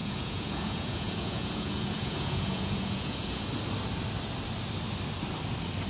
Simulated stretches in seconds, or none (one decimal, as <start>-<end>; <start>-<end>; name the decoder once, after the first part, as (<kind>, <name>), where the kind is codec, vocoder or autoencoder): 0.0-3.5 (vocoder, Vocos)